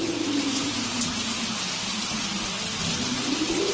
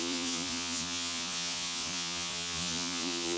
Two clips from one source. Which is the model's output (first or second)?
second